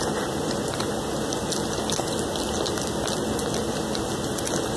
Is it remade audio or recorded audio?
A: recorded